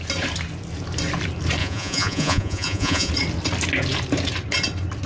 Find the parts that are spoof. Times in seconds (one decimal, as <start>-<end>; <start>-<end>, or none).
1.6-3.1